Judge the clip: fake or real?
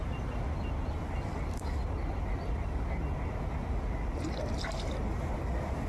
real